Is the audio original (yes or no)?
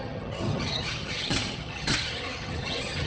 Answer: no